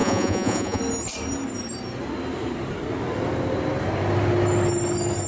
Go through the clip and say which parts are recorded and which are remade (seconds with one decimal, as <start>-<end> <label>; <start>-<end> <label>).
0.0-0.8 remade; 0.8-5.3 recorded